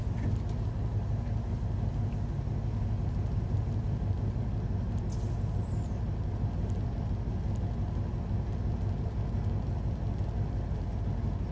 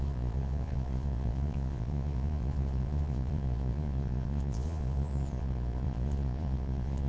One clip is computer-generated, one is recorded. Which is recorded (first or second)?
first